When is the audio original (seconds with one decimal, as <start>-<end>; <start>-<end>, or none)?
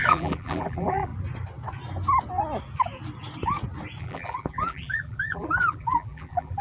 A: 1.1-4.0